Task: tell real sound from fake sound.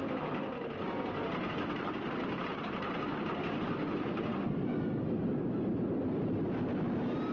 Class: real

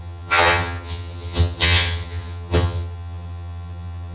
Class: fake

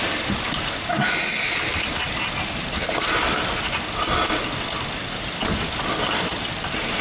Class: real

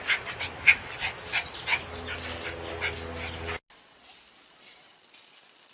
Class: real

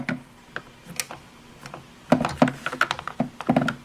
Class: real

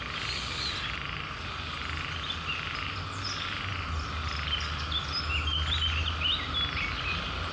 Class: real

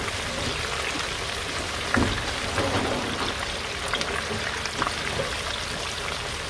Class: real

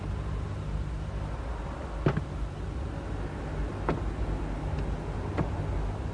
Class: real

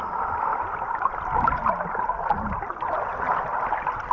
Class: real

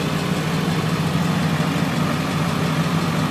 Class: real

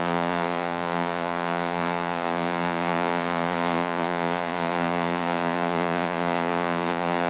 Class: fake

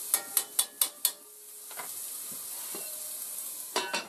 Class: real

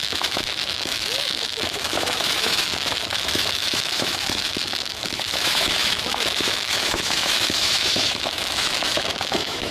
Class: fake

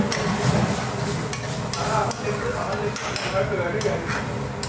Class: real